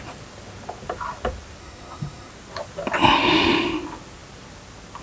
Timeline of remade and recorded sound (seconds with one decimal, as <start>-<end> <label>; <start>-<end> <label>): 0.0-1.6 recorded; 1.6-2.3 remade; 2.3-5.0 recorded